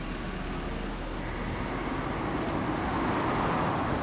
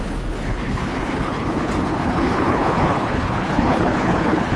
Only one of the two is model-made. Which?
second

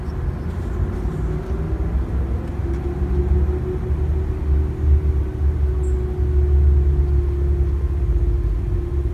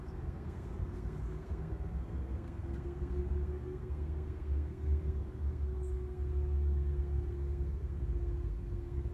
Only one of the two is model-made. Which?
second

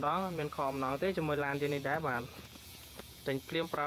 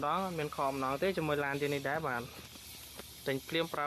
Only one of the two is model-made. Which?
first